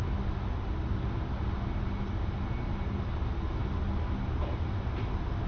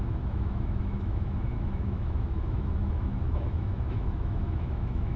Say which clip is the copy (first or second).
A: second